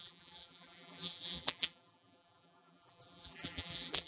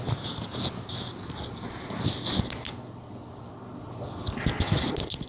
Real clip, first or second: second